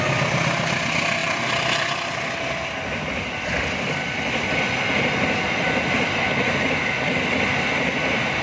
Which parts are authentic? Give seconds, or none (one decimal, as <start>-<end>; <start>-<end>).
0.0-1.2; 2.5-8.4